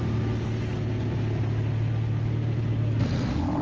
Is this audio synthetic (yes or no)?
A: no